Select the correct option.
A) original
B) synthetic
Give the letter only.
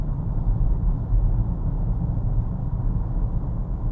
A